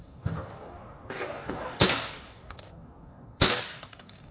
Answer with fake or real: fake